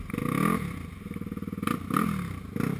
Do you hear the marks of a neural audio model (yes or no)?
no